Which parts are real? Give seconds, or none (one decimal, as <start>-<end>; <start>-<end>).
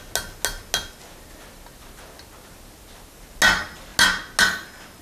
0.0-5.0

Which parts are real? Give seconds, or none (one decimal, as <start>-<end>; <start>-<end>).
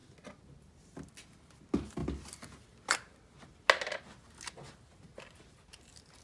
0.0-6.2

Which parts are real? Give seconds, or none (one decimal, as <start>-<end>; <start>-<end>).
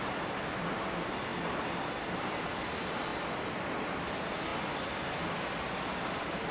0.0-6.5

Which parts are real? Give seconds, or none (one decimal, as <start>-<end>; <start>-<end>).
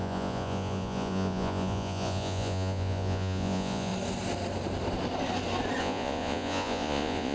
3.9-5.8